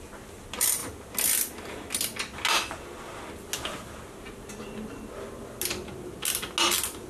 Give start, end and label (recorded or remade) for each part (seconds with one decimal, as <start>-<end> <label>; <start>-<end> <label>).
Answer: 0.0-7.1 recorded